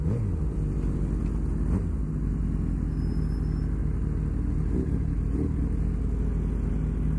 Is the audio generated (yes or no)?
no